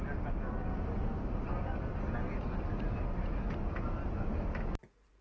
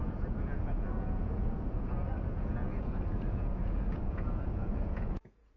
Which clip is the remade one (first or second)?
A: second